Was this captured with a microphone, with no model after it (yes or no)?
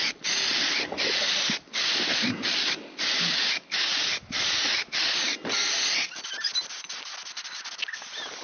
yes